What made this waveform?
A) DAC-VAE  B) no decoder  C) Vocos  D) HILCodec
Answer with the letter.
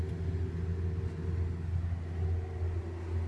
B